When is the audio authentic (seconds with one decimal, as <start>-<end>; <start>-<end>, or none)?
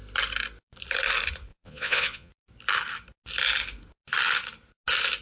0.0-1.5; 2.3-5.2